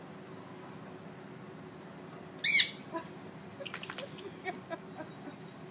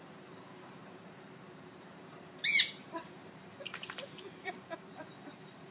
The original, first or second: first